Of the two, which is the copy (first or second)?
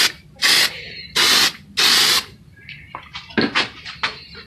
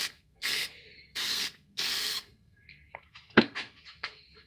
second